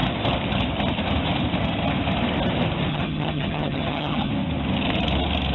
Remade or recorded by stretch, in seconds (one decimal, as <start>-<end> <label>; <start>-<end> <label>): 0.0-2.9 recorded; 2.9-4.3 remade; 4.3-5.5 recorded